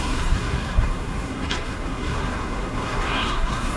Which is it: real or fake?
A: fake